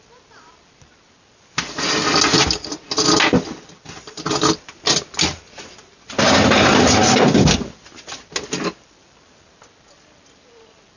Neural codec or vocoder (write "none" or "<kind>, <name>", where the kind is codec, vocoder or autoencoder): none